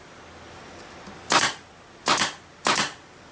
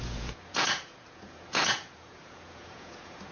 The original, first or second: first